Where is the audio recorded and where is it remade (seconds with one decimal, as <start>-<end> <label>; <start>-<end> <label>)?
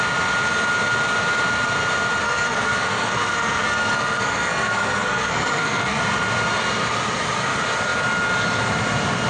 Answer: 0.0-2.2 recorded; 2.2-6.0 remade; 6.0-9.3 recorded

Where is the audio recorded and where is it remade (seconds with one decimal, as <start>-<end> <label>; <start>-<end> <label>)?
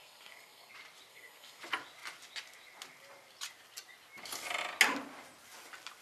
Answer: 0.0-0.7 remade; 0.7-1.1 recorded; 1.1-1.6 remade; 1.6-6.0 recorded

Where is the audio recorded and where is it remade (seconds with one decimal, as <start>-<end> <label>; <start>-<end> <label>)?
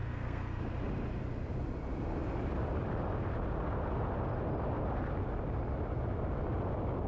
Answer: 0.0-0.6 remade; 0.6-7.1 recorded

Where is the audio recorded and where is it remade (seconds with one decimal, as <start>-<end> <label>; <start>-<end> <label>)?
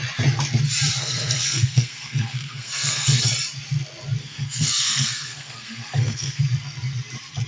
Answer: 0.0-1.0 recorded; 1.0-3.2 remade; 3.2-4.2 recorded; 4.2-6.4 remade; 6.4-7.5 recorded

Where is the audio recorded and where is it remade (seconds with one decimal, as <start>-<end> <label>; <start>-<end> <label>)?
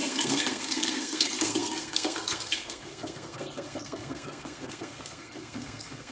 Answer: 0.0-6.1 remade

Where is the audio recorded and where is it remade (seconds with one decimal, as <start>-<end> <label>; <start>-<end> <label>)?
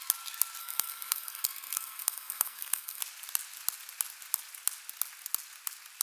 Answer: 0.0-0.6 recorded; 0.6-3.0 remade; 3.0-6.0 recorded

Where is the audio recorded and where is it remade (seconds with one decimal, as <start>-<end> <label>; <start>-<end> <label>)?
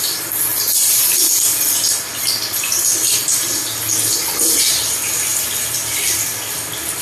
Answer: 0.0-7.0 recorded